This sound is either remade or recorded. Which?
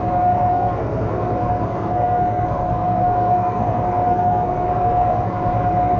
remade